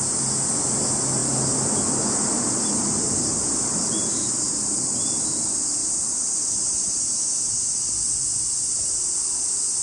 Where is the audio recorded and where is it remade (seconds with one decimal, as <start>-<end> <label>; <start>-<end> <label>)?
0.0-9.8 recorded